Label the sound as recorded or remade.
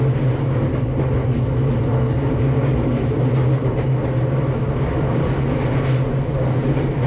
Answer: recorded